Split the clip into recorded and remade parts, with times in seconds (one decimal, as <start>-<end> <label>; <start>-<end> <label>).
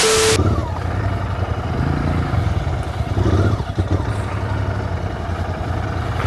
0.0-6.3 recorded